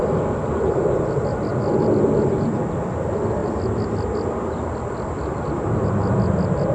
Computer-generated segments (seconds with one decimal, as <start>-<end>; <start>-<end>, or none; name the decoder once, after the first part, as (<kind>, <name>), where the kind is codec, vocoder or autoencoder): none